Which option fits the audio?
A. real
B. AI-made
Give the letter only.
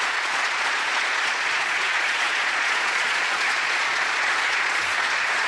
B